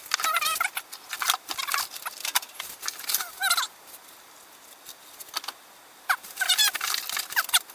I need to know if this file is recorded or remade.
recorded